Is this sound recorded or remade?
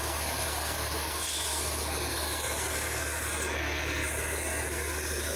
remade